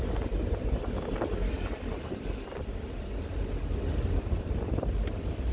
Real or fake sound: real